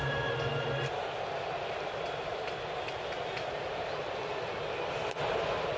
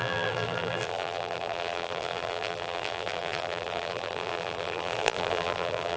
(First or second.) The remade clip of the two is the second